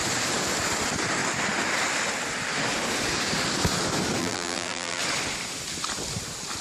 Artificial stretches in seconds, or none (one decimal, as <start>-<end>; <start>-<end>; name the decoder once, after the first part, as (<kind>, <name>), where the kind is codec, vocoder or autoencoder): 4.2-5.0 (vocoder, BigVGAN v2)